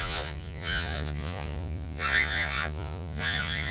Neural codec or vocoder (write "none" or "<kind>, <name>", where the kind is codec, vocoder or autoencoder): vocoder, Vocos